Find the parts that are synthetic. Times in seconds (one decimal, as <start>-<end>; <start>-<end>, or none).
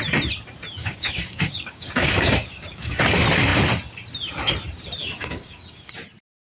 0.8-3.0; 5.0-5.9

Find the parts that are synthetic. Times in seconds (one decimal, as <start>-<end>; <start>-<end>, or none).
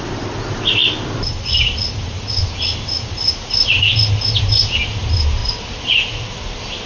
none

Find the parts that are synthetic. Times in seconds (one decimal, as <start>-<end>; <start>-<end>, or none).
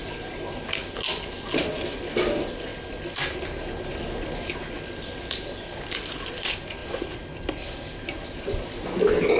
none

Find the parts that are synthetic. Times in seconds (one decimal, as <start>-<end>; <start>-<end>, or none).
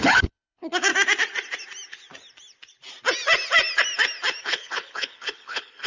0.0-0.9; 4.4-5.9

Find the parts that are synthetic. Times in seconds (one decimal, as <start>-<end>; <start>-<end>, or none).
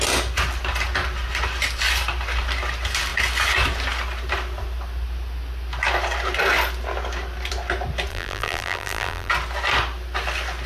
8.1-9.3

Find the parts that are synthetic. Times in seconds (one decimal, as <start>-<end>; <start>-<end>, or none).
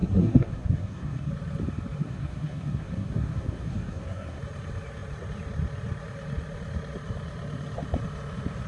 0.0-1.3; 2.0-4.4